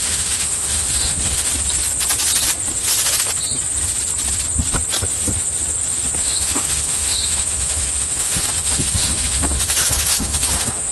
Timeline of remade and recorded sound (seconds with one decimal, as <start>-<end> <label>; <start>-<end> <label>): 0.0-1.5 remade; 1.5-6.2 recorded; 6.2-10.9 remade